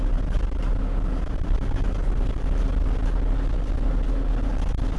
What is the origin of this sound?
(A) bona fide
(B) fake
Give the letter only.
A